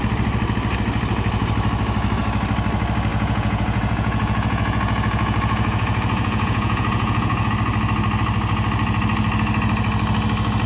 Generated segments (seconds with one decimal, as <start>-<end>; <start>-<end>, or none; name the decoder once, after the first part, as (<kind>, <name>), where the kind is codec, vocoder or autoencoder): 3.1-7.5 (vocoder, Vocos)